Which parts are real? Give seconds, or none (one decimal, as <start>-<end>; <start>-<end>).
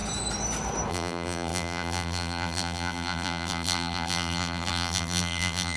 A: 0.0-0.9